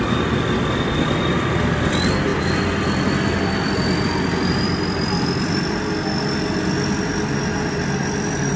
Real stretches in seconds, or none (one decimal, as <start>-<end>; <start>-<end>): 0.0-8.6